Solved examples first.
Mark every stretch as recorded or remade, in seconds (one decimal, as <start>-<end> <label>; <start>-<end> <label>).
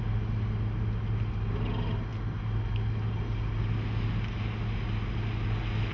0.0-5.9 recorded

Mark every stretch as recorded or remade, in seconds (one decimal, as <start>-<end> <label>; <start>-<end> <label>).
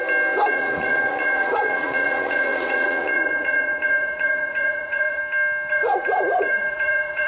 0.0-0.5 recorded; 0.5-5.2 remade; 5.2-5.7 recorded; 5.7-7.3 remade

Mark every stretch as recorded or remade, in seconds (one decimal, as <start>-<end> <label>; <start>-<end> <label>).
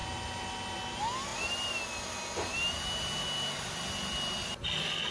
0.0-5.1 recorded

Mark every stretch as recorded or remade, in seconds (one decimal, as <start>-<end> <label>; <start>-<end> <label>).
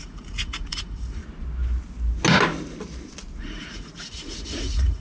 0.0-1.2 remade; 1.2-3.4 recorded; 3.4-5.0 remade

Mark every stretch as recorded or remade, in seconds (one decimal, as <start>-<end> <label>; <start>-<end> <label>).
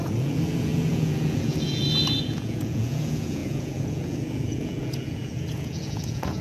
0.0-6.4 remade